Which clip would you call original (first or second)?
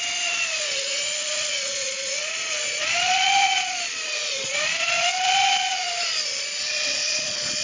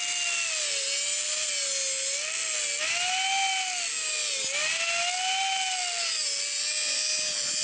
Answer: second